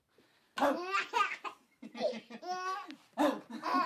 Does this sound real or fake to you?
real